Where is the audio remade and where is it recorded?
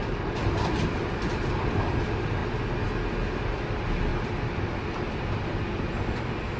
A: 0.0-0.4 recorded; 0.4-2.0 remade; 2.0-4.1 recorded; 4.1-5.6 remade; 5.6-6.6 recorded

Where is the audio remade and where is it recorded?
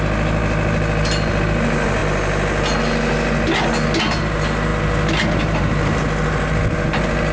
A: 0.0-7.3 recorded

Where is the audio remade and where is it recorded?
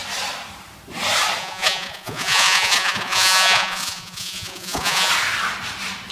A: 0.0-1.4 recorded; 1.4-5.1 remade; 5.1-6.1 recorded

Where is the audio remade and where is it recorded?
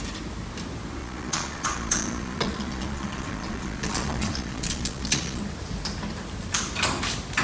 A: 0.0-1.0 recorded; 1.0-5.4 remade; 5.4-7.4 recorded